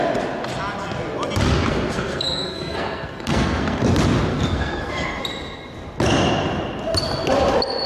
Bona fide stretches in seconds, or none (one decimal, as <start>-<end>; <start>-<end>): 0.0-1.7; 3.8-4.3; 5.2-7.9